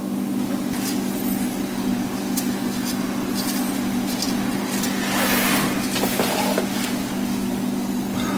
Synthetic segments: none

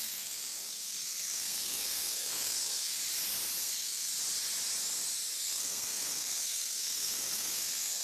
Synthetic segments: 0.0-3.0 (codec, SNAC); 3.6-4.1; 5.4-8.0